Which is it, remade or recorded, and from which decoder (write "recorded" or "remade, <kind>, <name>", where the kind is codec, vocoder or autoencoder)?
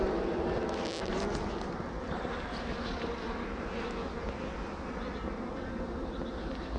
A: recorded